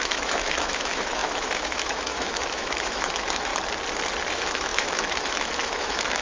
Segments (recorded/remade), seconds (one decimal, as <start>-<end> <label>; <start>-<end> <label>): 0.0-3.5 remade; 3.5-4.3 recorded; 4.3-6.2 remade